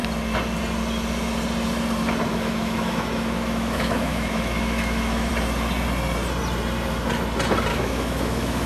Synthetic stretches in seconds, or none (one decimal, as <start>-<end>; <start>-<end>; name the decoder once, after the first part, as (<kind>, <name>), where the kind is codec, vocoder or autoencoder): 2.3-5.3 (autoencoder, DAC-VAE); 7.7-8.7